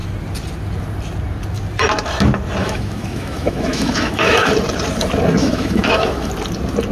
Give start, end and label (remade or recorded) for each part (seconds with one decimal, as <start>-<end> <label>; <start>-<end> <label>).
0.0-2.6 recorded; 2.6-4.5 remade; 4.5-5.4 recorded; 5.4-6.3 remade; 6.3-6.9 recorded

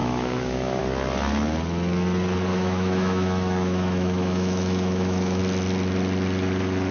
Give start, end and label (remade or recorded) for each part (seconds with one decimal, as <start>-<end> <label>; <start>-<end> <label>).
0.0-0.8 remade; 0.8-2.5 recorded; 2.5-5.4 remade; 5.4-6.9 recorded

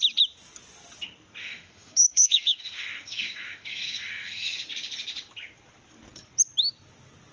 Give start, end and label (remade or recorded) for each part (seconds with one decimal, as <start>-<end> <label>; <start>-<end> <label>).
0.0-1.4 recorded; 1.4-4.6 remade; 4.6-7.3 recorded

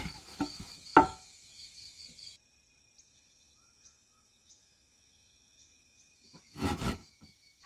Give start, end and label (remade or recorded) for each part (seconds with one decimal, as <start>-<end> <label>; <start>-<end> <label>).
0.0-2.0 remade; 2.0-3.0 recorded; 3.0-7.7 remade

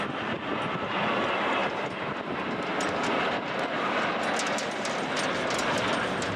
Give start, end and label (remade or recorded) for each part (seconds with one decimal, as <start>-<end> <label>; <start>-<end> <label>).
0.0-6.4 recorded

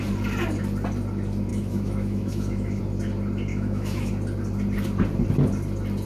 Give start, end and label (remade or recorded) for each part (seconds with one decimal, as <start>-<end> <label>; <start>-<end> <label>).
0.0-1.5 recorded; 1.5-2.8 remade; 2.8-3.5 recorded; 3.5-4.1 remade; 4.1-6.1 recorded

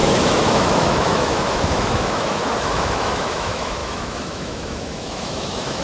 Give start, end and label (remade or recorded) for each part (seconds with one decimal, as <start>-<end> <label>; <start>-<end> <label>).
0.0-5.8 remade

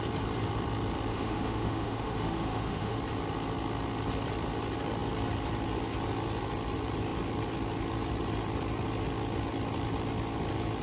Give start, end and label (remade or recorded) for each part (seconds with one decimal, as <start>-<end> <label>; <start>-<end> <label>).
0.0-1.1 recorded; 1.1-3.0 remade; 3.0-10.8 recorded